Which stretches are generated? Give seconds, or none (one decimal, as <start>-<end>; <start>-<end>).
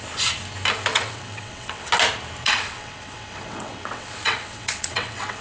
0.9-1.9; 2.4-5.4